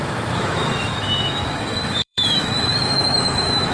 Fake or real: fake